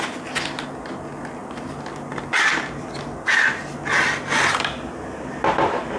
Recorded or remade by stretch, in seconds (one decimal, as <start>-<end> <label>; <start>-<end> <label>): 0.0-6.0 recorded